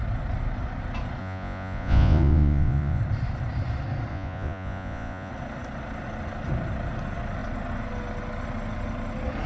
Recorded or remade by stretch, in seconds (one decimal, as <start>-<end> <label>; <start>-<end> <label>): 0.0-1.2 recorded; 1.2-3.0 remade; 3.0-4.1 recorded; 4.1-5.3 remade; 5.3-9.5 recorded